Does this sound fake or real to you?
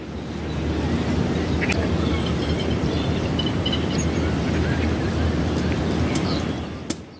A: real